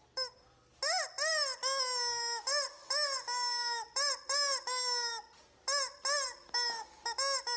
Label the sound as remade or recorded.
recorded